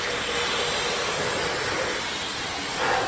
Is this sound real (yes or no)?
yes